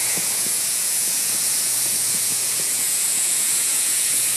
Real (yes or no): no